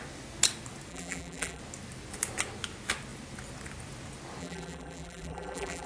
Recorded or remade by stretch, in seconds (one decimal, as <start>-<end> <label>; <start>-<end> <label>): 0.0-0.9 recorded; 0.9-1.6 remade; 1.6-4.4 recorded; 4.4-5.9 remade

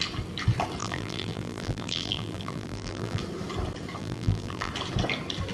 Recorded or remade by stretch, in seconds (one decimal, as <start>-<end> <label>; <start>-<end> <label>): 0.0-0.8 recorded; 0.8-3.2 remade; 3.2-4.0 recorded; 4.0-4.7 remade; 4.7-5.5 recorded

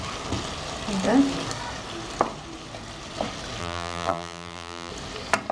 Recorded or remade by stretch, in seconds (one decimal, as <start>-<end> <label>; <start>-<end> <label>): 0.0-3.6 recorded; 3.6-4.9 remade; 4.9-5.5 recorded

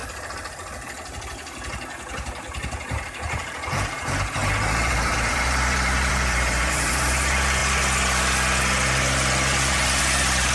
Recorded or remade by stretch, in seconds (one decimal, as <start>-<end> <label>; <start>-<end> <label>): 0.0-2.1 recorded; 2.1-7.6 remade; 7.6-10.0 recorded; 10.0-10.5 remade